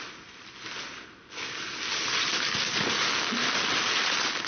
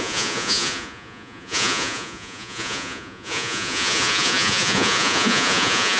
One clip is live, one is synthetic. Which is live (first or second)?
first